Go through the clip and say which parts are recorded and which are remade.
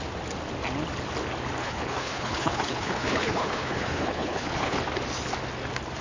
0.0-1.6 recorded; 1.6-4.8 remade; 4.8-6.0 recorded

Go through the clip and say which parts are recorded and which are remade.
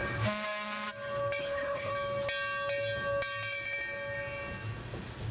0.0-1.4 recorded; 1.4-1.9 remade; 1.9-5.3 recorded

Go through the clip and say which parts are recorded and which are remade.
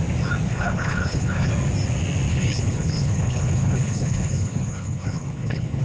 0.0-0.5 recorded; 0.5-1.5 remade; 1.5-2.3 recorded; 2.3-5.8 remade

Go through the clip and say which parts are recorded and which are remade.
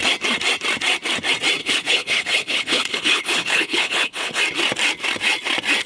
0.0-1.6 recorded; 1.6-4.4 remade; 4.4-5.9 recorded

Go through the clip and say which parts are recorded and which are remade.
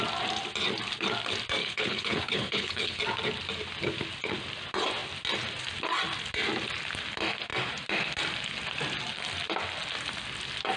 0.0-1.6 recorded; 1.6-3.0 remade; 3.0-10.8 recorded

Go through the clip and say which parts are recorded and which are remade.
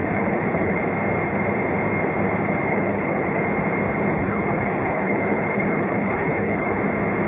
0.0-0.8 remade; 0.8-2.7 recorded; 2.7-3.4 remade; 3.4-4.1 recorded; 4.1-6.8 remade; 6.8-7.3 recorded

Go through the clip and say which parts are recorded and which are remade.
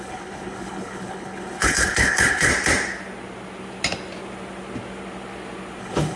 0.0-2.5 remade; 2.5-5.8 recorded; 5.8-6.2 remade